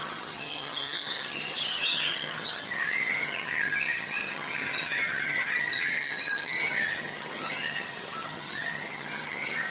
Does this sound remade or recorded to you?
remade